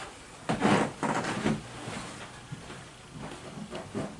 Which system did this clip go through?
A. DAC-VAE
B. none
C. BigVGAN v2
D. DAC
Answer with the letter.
B